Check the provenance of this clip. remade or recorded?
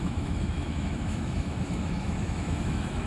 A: remade